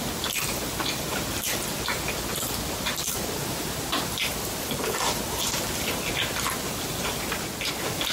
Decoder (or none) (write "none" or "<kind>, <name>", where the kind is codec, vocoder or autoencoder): none